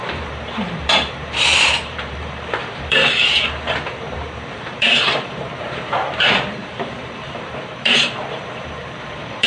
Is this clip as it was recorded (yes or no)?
no